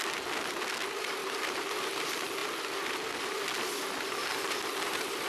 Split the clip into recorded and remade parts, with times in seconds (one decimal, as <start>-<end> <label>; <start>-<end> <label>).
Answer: 0.0-1.2 recorded; 1.2-1.8 remade; 1.8-4.3 recorded; 4.3-5.3 remade